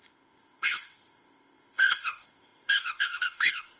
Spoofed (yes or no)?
yes